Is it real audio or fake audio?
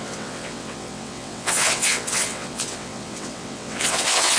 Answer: fake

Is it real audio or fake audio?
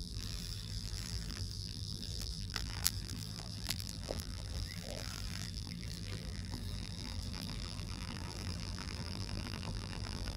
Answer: fake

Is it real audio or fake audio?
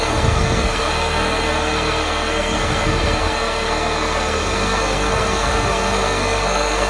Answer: fake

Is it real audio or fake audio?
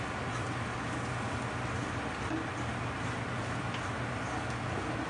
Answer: real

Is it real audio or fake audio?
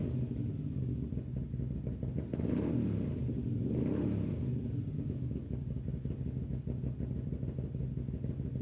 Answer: real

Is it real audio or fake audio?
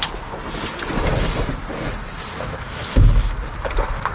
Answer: real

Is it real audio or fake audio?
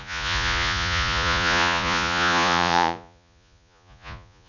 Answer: fake